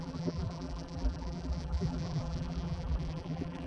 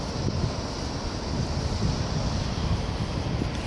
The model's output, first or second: first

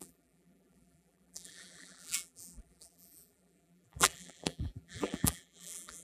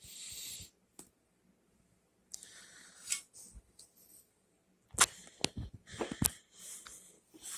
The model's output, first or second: first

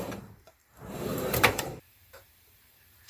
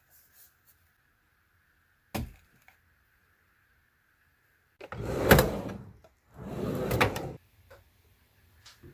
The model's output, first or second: first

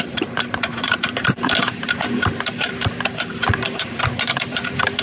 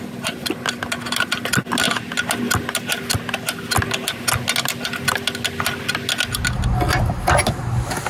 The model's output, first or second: first